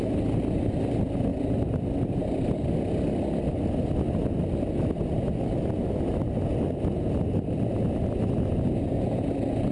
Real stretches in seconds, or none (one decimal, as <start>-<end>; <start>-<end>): 0.0-9.7